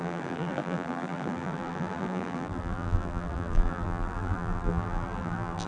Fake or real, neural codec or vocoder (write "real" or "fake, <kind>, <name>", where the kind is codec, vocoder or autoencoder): fake, vocoder, BigVGAN v2